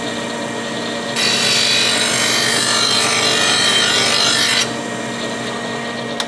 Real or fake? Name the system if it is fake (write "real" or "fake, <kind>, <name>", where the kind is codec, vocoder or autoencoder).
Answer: real